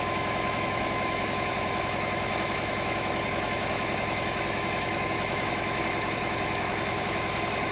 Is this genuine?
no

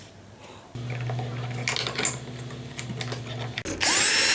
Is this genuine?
yes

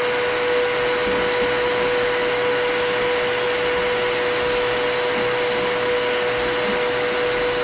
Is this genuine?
yes